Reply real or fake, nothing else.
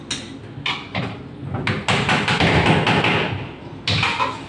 real